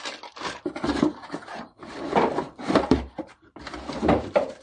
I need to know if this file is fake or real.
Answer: fake